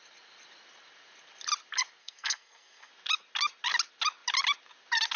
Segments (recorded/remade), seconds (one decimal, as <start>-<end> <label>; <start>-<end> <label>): 0.0-2.0 recorded; 2.0-2.9 remade; 2.9-5.2 recorded